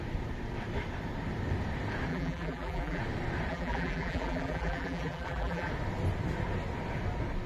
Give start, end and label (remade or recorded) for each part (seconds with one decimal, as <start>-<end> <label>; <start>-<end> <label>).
0.0-2.1 recorded; 2.1-3.0 remade; 3.0-3.5 recorded; 3.5-5.7 remade; 5.7-7.5 recorded